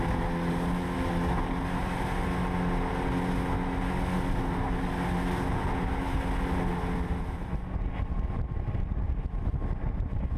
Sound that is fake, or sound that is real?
real